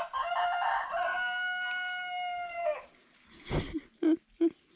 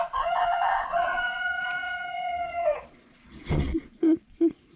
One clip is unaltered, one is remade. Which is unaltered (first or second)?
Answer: first